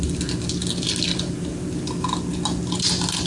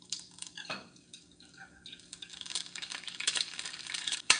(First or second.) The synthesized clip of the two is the second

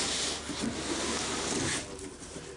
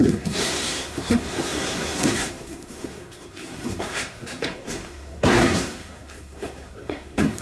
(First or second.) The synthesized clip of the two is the second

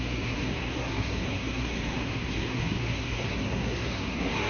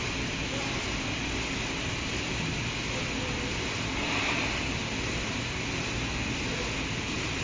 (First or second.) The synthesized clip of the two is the first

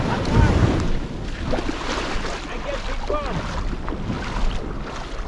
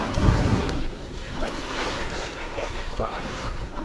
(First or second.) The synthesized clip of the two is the second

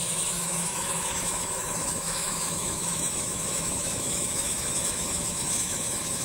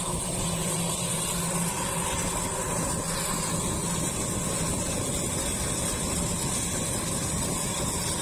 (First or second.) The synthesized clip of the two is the first